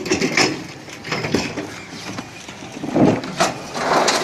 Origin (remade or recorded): recorded